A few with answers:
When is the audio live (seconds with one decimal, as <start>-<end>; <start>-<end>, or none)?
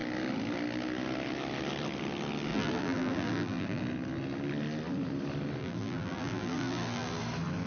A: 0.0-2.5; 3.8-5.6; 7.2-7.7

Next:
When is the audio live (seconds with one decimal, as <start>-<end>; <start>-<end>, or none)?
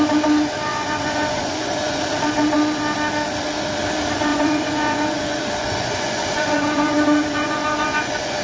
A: 0.0-0.7; 2.0-4.3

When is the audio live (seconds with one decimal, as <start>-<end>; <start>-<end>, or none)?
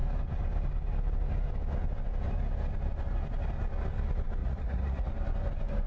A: 0.0-4.4; 5.1-5.9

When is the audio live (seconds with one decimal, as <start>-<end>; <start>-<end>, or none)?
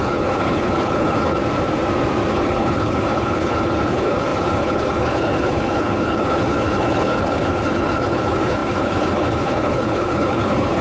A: 1.4-2.3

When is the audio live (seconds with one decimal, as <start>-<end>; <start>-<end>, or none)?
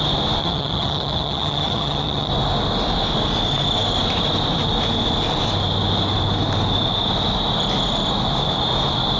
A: 0.0-0.4; 2.3-9.2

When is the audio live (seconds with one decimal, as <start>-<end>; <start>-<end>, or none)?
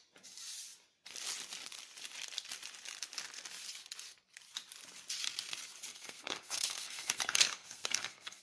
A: 0.0-5.9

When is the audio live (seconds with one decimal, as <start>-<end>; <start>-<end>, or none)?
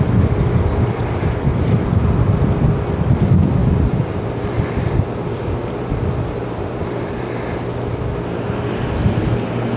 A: 0.0-1.5; 2.0-3.6; 4.8-9.8